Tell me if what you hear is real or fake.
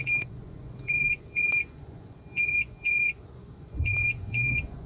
fake